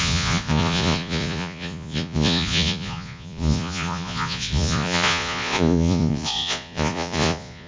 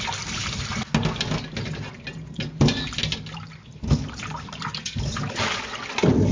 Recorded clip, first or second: second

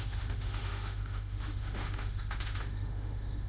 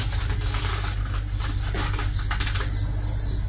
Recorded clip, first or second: second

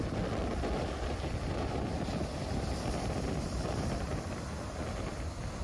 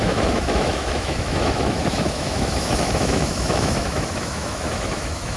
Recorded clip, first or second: first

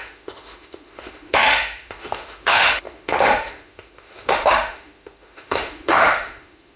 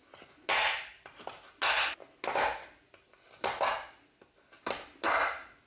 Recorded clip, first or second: second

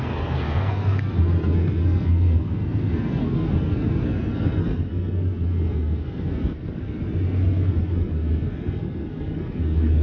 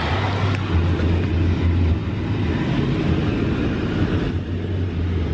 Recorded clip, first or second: second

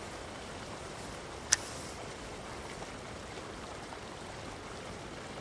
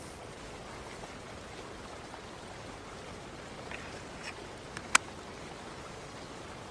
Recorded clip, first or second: second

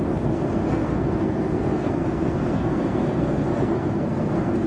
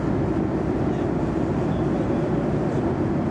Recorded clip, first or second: second